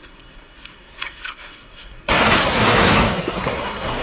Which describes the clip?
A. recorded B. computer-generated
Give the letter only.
B